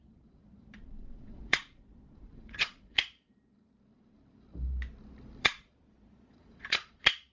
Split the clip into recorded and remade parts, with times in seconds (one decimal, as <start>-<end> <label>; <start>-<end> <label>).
0.0-3.3 remade; 3.3-5.4 recorded; 5.4-7.3 remade